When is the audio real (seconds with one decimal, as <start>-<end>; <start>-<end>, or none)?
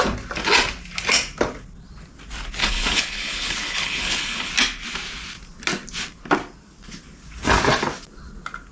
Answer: 0.0-2.6; 4.5-8.7